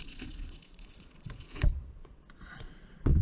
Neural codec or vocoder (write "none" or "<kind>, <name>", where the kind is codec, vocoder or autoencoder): vocoder, Vocos